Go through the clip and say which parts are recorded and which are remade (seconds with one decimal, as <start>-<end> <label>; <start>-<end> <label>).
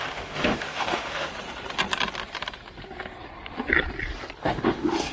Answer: 0.0-1.3 remade; 1.3-4.4 recorded; 4.4-5.1 remade